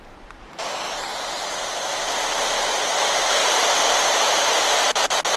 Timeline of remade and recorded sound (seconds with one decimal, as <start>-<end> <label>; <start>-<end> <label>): 0.0-3.4 recorded; 3.4-4.8 remade; 4.8-5.4 recorded